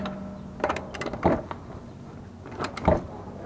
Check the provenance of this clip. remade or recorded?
recorded